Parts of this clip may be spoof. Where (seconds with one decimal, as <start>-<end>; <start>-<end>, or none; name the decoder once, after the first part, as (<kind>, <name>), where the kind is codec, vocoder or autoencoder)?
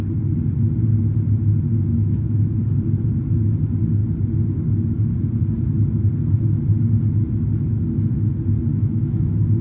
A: 1.9-2.6 (autoencoder, DAC-VAE); 8.7-9.6